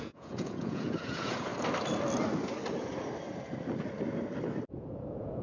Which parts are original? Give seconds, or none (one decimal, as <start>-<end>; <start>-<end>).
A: 1.5-4.7